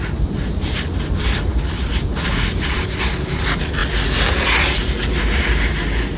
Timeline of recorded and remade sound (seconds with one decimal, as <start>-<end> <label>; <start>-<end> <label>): 0.0-6.2 recorded